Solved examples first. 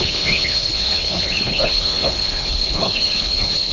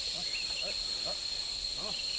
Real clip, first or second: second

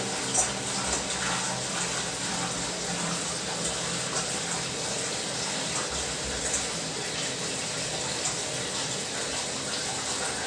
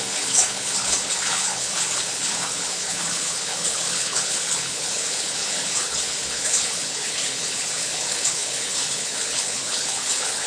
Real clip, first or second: first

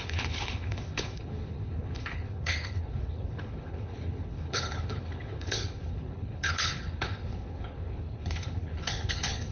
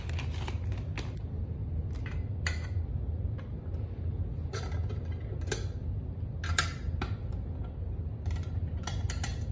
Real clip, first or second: second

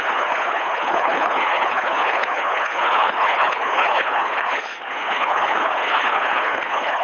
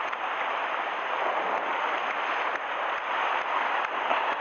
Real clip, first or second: second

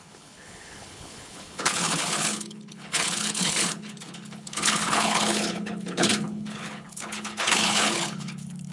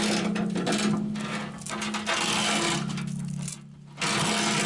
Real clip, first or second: second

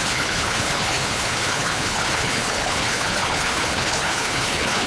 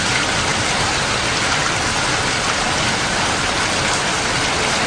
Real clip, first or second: second